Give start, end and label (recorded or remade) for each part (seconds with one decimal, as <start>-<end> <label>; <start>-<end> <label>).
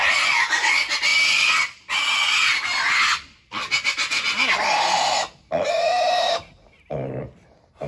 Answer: 0.0-7.9 recorded